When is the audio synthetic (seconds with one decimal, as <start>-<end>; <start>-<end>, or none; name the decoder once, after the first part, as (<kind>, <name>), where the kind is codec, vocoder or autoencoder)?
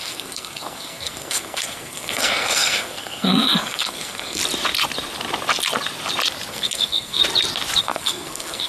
0.0-4.4 (codec, SNAC); 6.5-7.2; 7.8-8.7